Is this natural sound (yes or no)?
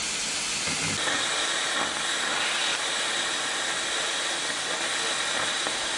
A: yes